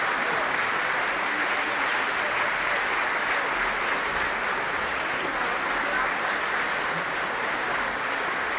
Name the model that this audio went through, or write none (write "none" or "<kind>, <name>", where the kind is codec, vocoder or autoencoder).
none